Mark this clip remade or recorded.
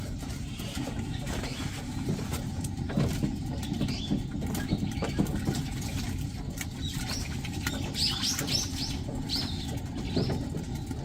recorded